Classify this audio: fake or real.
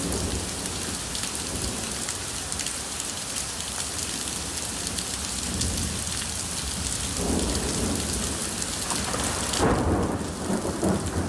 real